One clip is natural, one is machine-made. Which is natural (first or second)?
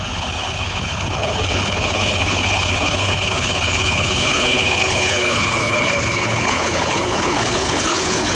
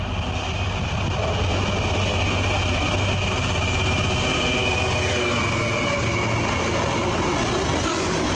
second